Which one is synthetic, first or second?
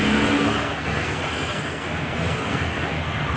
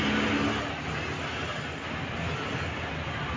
first